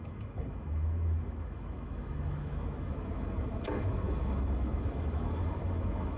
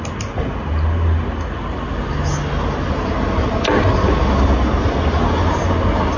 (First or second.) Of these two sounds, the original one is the second